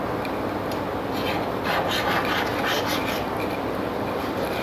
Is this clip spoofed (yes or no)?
no